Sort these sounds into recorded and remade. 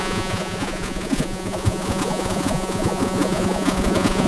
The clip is remade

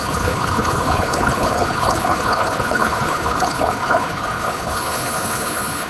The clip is remade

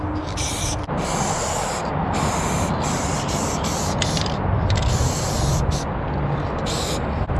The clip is recorded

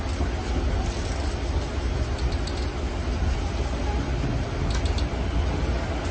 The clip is recorded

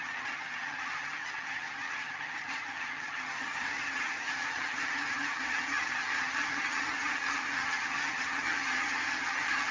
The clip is remade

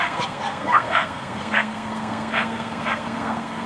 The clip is remade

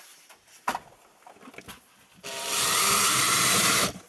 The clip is remade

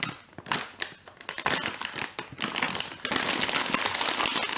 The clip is recorded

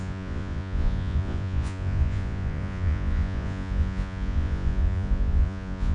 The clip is remade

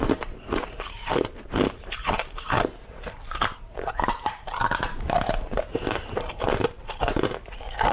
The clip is remade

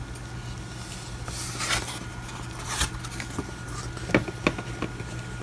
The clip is recorded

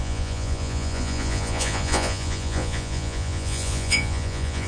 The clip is remade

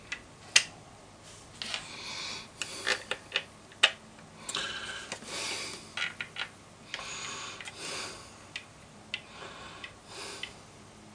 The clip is recorded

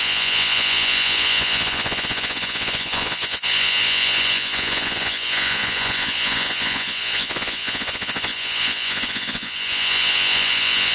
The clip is remade